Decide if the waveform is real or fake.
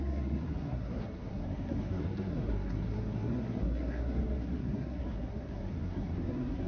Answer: fake